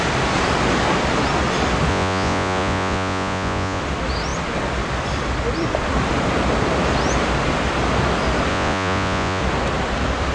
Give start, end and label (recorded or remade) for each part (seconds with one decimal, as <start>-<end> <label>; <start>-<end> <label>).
0.0-1.9 recorded; 1.9-3.8 remade; 3.8-8.5 recorded; 8.5-9.4 remade; 9.4-10.3 recorded